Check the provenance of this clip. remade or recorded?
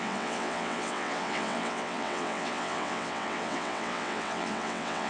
remade